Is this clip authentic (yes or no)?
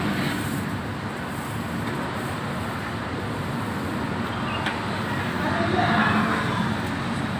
yes